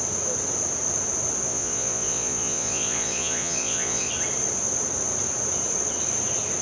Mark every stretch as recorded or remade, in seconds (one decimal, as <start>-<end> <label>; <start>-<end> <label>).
0.0-1.5 recorded; 1.5-4.1 remade; 4.1-6.6 recorded